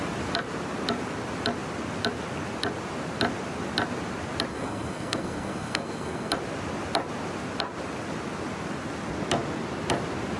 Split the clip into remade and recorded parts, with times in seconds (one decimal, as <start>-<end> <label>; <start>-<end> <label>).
0.0-4.5 recorded; 4.5-6.3 remade; 6.3-10.4 recorded